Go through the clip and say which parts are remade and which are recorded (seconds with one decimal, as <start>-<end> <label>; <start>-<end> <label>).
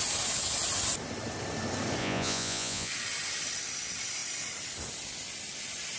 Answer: 0.0-2.0 recorded; 2.0-2.9 remade; 2.9-6.0 recorded